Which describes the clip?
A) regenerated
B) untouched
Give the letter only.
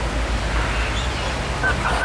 B